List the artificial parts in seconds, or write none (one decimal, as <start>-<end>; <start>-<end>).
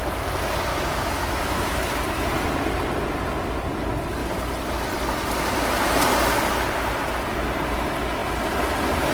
0.7-2.0